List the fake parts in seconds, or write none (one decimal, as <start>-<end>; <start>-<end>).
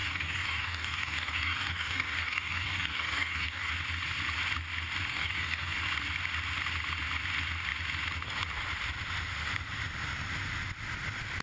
0.0-3.7; 5.1-5.8